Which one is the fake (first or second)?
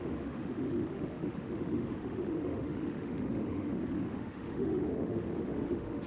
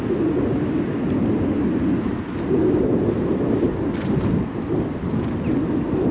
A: first